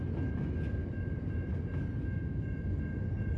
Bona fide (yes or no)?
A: yes